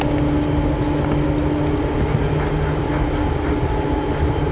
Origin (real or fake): real